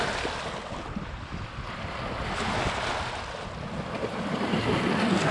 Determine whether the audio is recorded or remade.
recorded